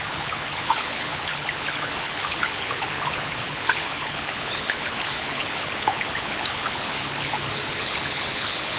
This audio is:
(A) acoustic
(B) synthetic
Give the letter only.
B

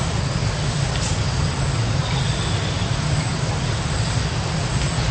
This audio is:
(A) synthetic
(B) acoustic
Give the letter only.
B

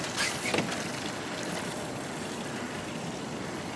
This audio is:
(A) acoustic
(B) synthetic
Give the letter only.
A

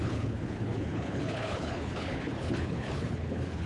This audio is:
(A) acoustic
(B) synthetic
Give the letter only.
B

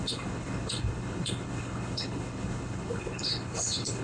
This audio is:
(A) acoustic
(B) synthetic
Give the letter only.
B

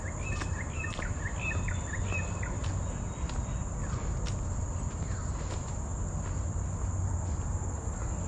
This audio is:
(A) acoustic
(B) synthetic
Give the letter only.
A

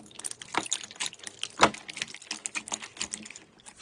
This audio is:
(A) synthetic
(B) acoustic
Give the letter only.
B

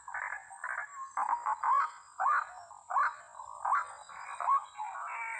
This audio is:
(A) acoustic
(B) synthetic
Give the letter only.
A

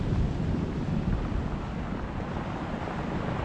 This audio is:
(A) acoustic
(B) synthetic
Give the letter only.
A